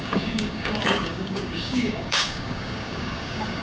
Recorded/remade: remade